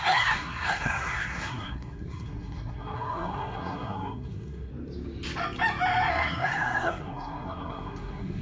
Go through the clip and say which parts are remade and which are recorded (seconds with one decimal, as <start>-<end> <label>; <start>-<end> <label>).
0.0-4.7 remade; 4.7-6.1 recorded; 6.1-8.4 remade